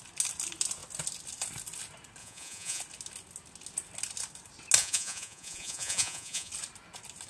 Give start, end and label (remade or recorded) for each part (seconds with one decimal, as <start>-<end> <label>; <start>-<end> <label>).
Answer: 0.0-2.2 recorded; 2.2-2.8 remade; 2.8-4.8 recorded; 4.8-6.5 remade; 6.5-7.3 recorded